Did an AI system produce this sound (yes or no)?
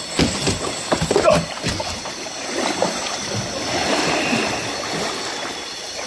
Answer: no